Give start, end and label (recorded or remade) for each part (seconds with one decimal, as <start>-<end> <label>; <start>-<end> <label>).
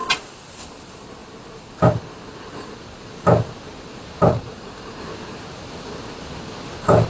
0.0-4.3 recorded; 4.3-5.0 remade; 5.0-7.1 recorded